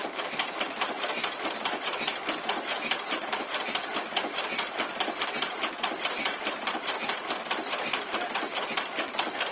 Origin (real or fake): fake